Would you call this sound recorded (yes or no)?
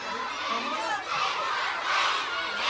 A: yes